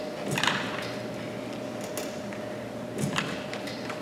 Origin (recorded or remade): recorded